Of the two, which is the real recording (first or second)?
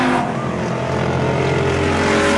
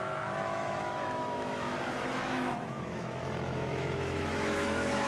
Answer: first